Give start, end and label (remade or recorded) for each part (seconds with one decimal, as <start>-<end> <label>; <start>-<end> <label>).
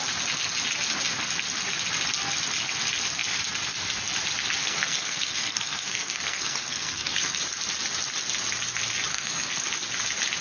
0.0-4.6 recorded; 4.6-7.4 remade; 7.4-9.1 recorded; 9.1-9.6 remade; 9.6-10.4 recorded